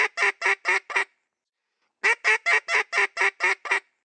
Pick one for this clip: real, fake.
real